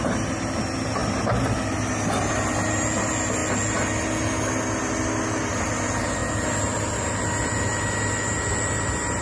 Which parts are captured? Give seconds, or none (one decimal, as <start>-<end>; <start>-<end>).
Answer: 0.0-9.2